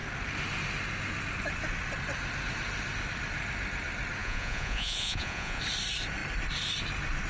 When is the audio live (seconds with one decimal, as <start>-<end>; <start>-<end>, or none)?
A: 0.0-4.2; 5.6-7.3